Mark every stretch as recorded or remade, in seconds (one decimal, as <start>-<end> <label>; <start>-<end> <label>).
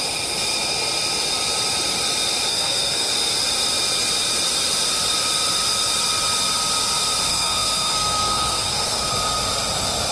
0.0-2.5 recorded; 2.5-3.1 remade; 3.1-7.3 recorded; 7.3-9.1 remade; 9.1-10.1 recorded